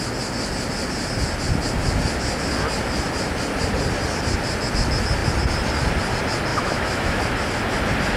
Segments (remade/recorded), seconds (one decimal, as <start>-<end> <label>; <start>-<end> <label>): 0.0-6.5 recorded; 6.5-7.2 remade; 7.2-8.2 recorded